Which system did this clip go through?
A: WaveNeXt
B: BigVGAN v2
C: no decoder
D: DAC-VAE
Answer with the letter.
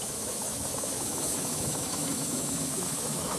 D